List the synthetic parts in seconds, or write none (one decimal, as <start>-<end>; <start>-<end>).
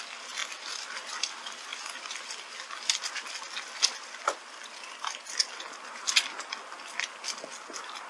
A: none